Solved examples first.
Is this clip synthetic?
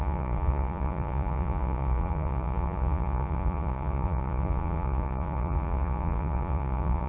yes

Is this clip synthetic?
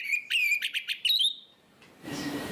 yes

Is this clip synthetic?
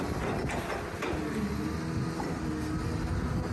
no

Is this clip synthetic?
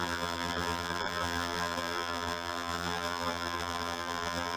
yes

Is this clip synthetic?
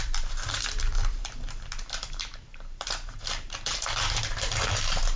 yes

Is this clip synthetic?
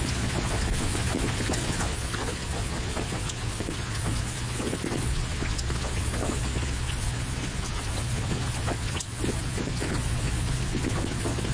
yes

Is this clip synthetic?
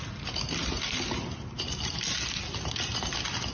no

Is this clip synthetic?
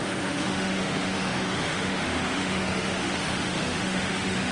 yes